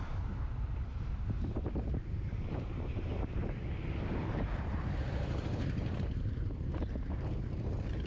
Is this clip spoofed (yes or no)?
yes